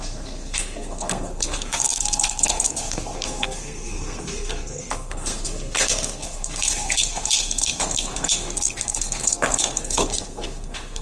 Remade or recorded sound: remade